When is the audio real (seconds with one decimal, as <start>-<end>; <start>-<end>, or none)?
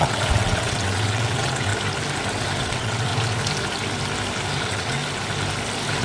1.7-2.6; 3.1-4.6; 5.0-6.0